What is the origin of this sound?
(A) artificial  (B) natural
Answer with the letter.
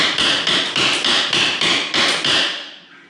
B